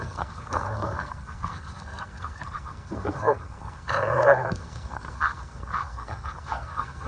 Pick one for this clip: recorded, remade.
remade